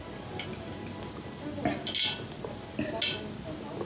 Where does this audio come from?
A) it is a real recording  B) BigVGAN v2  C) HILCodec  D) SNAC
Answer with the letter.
A